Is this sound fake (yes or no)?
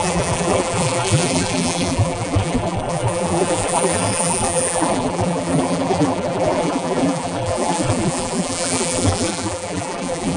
yes